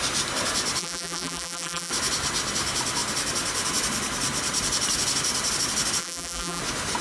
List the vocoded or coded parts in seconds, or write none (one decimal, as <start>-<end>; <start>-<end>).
0.8-1.9; 6.0-6.6